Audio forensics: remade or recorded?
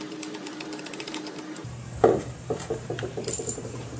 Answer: remade